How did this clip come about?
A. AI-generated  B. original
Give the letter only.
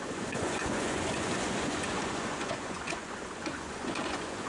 A